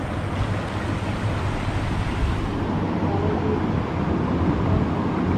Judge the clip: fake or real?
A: real